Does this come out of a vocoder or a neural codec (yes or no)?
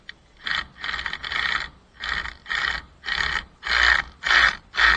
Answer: no